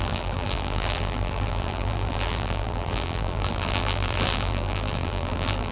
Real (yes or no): no